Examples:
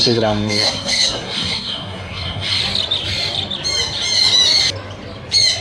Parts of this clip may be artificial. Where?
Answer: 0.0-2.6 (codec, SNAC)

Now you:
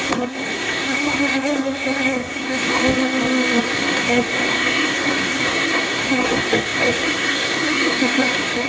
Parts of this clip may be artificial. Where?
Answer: 0.0-2.8 (codec, SNAC); 3.6-8.7

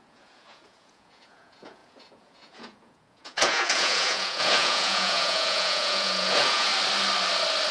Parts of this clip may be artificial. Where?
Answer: 0.0-6.7 (vocoder, Vocos)

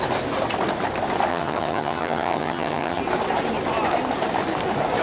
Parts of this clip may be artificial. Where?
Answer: 1.3-3.0 (vocoder, HiFi-GAN)

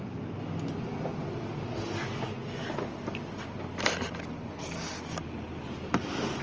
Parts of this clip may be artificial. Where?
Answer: none

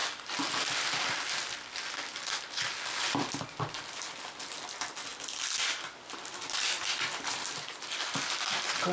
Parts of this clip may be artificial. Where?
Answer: 5.1-5.6 (vocoder, BigVGAN v2)